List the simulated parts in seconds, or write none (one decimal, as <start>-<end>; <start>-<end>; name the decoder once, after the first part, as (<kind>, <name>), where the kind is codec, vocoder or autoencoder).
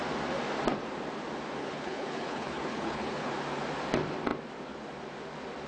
1.6-3.3 (codec, HILCodec)